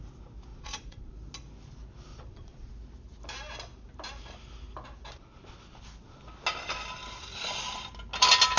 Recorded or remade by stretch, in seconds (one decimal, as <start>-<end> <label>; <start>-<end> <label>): 0.0-0.5 recorded; 0.5-1.1 remade; 1.1-2.1 recorded; 2.1-2.7 remade; 2.7-8.6 recorded